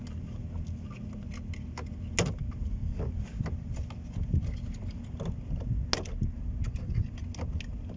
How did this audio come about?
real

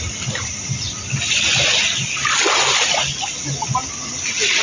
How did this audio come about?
real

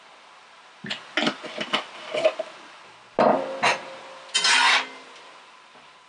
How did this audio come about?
real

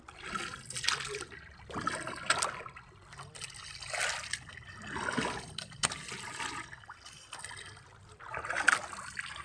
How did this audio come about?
real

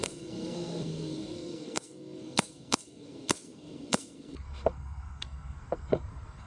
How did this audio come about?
fake